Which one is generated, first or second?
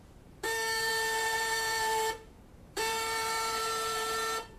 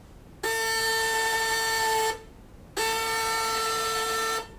first